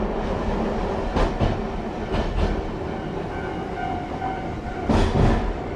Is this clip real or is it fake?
real